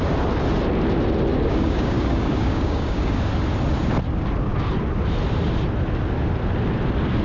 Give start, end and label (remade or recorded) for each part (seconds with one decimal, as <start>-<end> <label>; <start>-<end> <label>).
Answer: 0.0-1.3 recorded; 1.3-3.3 remade; 3.3-7.2 recorded